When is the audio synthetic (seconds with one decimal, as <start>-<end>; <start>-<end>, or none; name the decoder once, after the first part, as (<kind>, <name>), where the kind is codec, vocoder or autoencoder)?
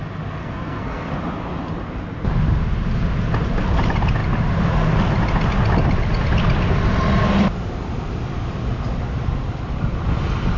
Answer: 0.4-1.1 (codec, SNAC)